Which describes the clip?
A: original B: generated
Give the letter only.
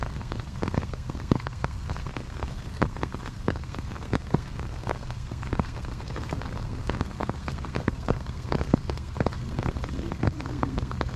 B